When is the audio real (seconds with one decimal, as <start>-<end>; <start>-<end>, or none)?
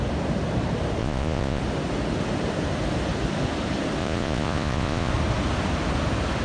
0.0-1.0; 1.6-4.0; 5.1-6.4